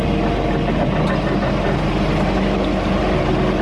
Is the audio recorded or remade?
recorded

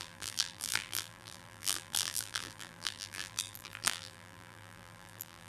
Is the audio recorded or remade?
remade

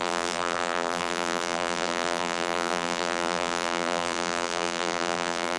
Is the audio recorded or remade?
remade